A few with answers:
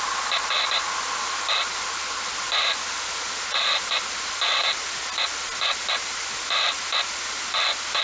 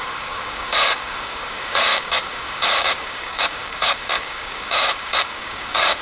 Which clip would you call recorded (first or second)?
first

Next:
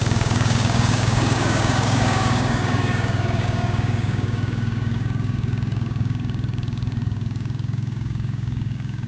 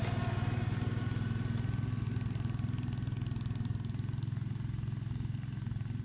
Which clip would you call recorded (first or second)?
second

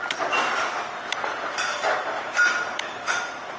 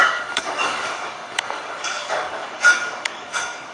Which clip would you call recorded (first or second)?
first